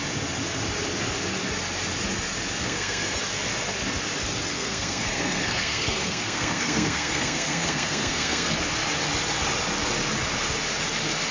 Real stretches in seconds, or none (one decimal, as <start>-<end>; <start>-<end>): 0.0-2.6; 3.2-4.5; 8.5-11.3